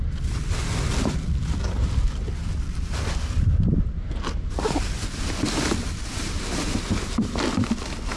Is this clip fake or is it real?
fake